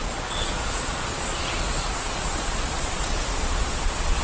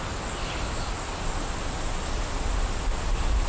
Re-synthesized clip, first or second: first